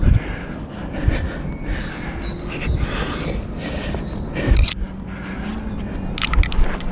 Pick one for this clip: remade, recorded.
recorded